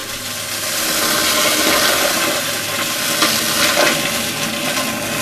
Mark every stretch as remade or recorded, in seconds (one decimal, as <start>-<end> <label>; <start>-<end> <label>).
0.0-5.2 recorded